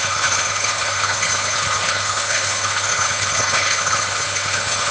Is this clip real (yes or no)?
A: no